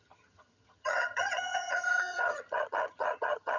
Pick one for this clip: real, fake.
fake